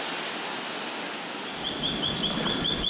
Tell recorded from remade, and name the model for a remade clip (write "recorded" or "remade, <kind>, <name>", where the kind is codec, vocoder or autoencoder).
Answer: recorded